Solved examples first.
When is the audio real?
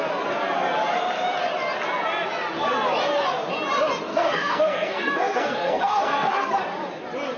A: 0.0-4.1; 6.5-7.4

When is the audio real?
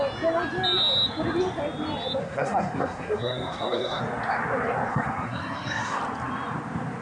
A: 0.0-2.2; 4.0-4.9; 6.0-7.0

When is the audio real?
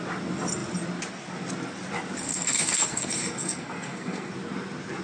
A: 0.0-2.3; 4.3-5.0